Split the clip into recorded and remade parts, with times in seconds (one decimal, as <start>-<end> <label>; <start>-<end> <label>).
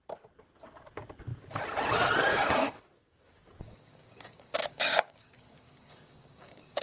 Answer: 0.0-2.3 recorded; 2.3-6.8 remade